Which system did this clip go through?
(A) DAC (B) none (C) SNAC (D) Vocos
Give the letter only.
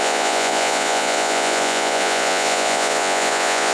D